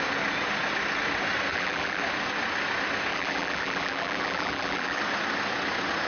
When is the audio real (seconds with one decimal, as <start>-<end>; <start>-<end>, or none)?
0.0-1.5; 2.0-3.1; 5.0-6.1